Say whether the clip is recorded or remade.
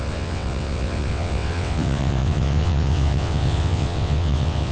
remade